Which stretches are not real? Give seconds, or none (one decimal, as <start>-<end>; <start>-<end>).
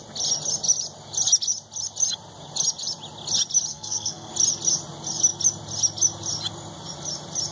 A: 3.7-4.3